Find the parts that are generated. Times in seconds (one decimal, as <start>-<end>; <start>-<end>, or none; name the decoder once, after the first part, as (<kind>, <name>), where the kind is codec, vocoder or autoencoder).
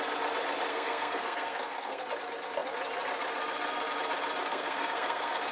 0.7-2.0 (codec, SNAC); 4.4-5.5